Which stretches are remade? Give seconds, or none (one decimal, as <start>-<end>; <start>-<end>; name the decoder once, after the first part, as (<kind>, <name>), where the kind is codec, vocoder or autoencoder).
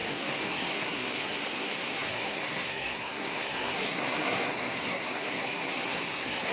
0.0-6.5 (codec, SNAC)